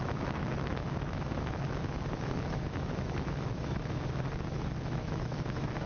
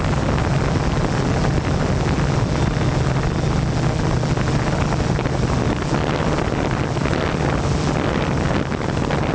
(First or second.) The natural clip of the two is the second